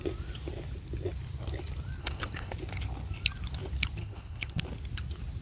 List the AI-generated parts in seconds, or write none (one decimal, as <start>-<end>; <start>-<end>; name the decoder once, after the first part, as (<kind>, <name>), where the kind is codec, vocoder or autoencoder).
2.0-2.5 (codec, HILCodec); 4.0-4.6